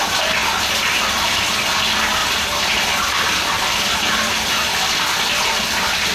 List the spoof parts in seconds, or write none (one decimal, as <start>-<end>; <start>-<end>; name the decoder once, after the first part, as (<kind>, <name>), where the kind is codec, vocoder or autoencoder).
2.2-4.3 (vocoder, BigVGAN v2)